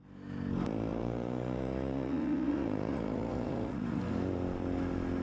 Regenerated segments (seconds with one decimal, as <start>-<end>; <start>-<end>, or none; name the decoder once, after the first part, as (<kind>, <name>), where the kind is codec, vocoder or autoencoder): 0.9-4.0 (vocoder, Vocos)